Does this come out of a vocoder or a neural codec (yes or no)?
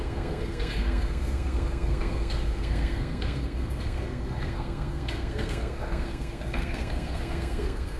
yes